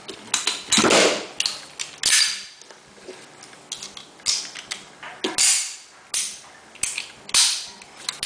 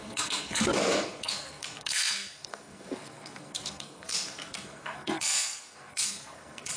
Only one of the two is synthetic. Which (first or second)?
second